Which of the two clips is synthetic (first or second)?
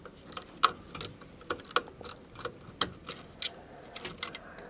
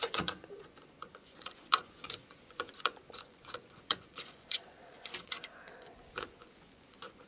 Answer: second